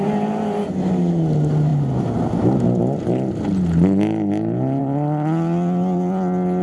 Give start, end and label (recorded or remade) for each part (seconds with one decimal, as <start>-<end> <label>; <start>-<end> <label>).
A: 0.0-6.6 recorded